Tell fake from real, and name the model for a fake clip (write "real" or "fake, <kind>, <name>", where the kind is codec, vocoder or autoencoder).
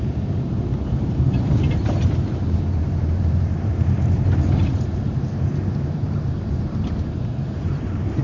fake, vocoder, BigVGAN v2